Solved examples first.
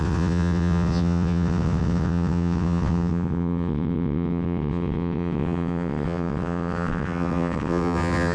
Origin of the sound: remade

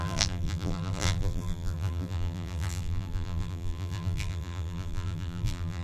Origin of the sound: remade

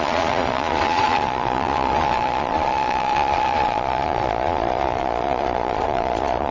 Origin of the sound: remade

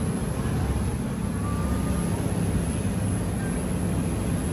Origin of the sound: recorded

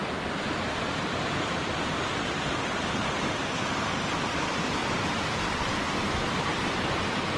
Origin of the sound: recorded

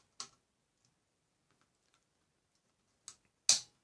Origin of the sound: recorded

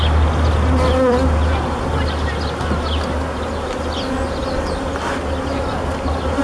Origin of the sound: recorded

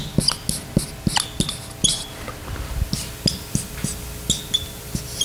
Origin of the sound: recorded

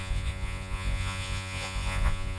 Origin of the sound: remade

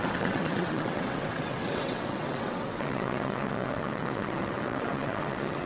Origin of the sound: remade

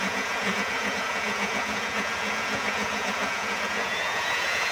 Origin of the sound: remade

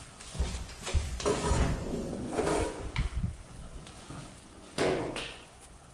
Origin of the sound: remade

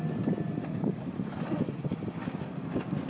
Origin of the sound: recorded